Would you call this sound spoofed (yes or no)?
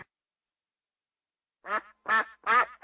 no